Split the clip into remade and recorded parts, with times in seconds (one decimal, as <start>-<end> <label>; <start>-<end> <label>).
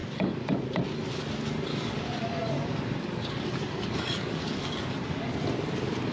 0.0-0.6 remade; 0.6-1.7 recorded; 1.7-5.4 remade; 5.4-6.1 recorded